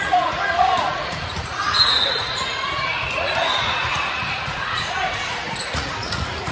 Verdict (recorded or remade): remade